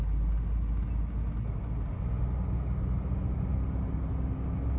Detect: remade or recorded recorded